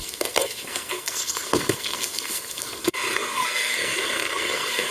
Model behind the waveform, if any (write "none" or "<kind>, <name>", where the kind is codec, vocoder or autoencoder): codec, SNAC